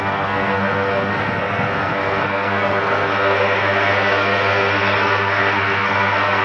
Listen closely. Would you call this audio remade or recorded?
remade